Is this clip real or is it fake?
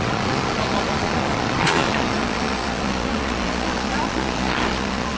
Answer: fake